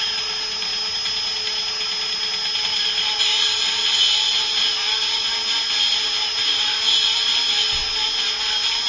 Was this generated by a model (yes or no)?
no